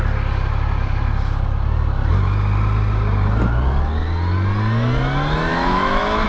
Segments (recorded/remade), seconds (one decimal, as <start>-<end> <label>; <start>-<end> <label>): 0.0-5.5 recorded; 5.5-6.3 remade